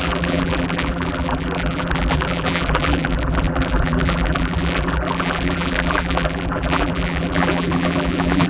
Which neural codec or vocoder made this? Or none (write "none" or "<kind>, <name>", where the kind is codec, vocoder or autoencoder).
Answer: vocoder, BigVGAN v2